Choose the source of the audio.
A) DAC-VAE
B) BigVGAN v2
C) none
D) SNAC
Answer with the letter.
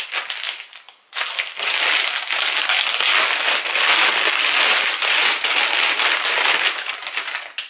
C